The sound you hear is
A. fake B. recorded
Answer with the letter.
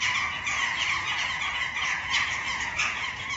A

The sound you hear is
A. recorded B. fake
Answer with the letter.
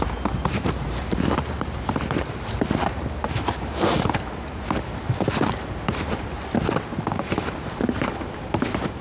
B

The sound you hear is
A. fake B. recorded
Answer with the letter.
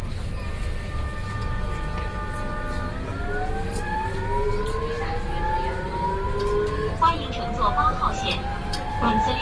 B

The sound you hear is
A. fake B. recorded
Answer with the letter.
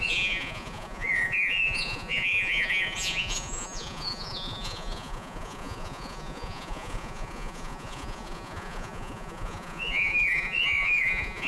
A